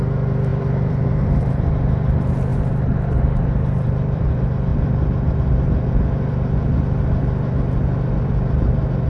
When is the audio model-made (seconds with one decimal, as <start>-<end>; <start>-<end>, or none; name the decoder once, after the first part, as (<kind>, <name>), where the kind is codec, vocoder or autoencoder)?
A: 0.5-1.7 (vocoder, BigVGAN v2); 2.5-4.3